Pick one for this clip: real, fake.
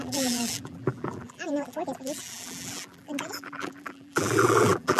fake